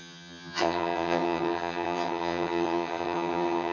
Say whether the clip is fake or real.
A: fake